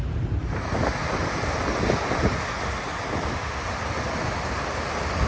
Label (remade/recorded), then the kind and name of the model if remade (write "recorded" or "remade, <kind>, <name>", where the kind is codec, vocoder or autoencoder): recorded